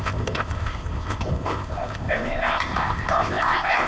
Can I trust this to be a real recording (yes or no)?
no